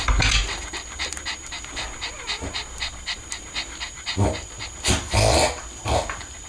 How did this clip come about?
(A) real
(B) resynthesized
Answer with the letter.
A